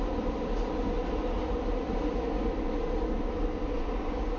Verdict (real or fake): real